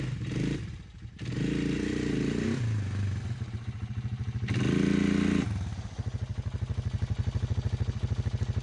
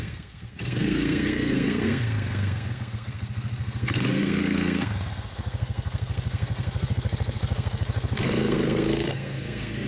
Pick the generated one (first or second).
second